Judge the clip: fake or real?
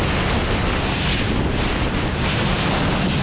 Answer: real